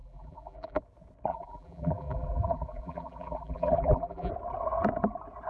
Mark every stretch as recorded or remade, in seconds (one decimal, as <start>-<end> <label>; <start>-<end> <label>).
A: 0.0-0.8 remade; 0.8-1.3 recorded; 1.3-4.3 remade; 4.3-5.5 recorded